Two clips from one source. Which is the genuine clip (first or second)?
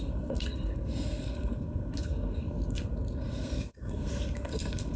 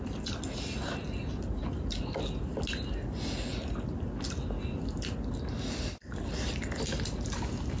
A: second